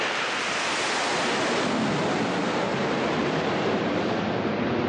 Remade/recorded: recorded